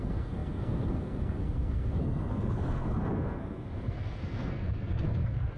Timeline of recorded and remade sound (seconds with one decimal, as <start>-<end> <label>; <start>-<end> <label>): 0.0-5.6 remade